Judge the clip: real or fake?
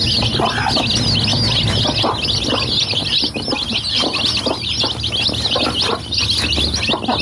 real